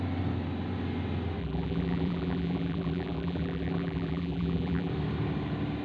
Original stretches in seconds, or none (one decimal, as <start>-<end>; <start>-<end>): 0.0-1.4; 4.9-5.8